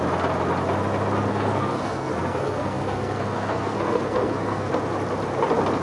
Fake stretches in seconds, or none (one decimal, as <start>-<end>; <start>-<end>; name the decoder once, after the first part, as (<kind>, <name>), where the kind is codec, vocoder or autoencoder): 1.3-4.7 (codec, SNAC)